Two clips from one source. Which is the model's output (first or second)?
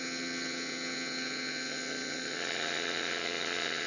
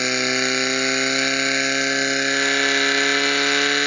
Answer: first